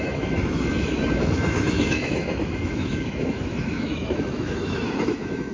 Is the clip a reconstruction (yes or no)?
yes